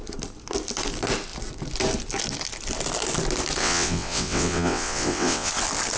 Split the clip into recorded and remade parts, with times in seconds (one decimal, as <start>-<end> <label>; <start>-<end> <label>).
0.0-3.6 recorded; 3.6-5.5 remade; 5.5-6.0 recorded